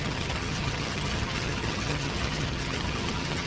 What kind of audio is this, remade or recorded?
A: remade